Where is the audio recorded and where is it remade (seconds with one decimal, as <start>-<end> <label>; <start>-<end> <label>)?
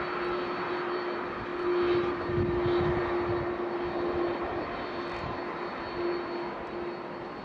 0.0-7.4 recorded